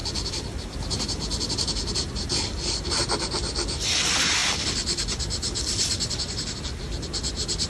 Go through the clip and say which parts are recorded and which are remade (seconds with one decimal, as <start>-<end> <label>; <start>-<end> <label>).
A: 0.0-7.7 recorded